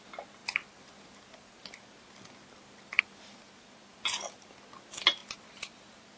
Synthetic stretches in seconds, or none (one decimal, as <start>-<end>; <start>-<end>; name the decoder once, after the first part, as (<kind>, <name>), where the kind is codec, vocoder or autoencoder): none